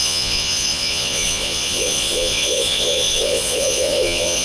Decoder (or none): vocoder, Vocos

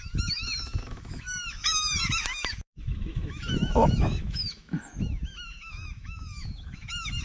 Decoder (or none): autoencoder, DAC-VAE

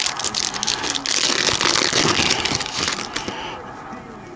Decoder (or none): none